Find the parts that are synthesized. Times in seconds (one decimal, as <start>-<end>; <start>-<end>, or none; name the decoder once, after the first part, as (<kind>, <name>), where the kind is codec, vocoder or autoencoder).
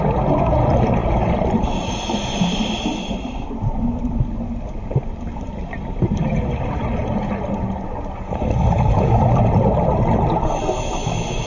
none